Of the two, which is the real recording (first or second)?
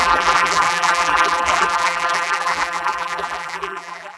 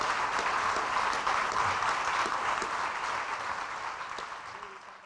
second